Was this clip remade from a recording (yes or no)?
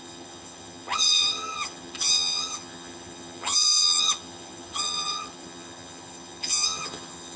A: yes